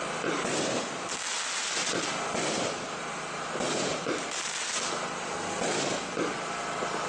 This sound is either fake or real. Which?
real